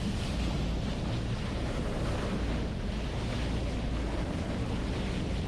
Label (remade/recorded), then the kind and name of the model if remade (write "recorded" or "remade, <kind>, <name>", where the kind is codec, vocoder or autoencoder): recorded